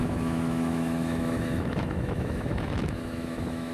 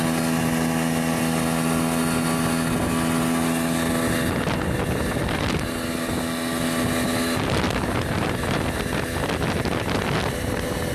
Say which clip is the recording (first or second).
second